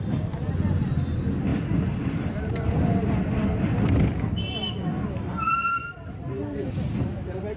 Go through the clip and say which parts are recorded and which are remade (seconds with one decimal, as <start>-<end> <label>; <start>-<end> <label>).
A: 0.0-1.5 recorded; 1.5-4.5 remade; 4.5-5.8 recorded; 5.8-6.7 remade; 6.7-7.6 recorded